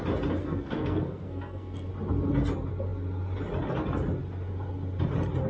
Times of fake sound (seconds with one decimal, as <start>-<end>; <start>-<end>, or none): 0.4-1.9